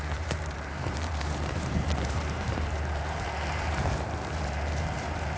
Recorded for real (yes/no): no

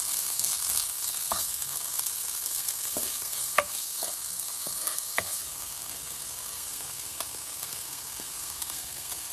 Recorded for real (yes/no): no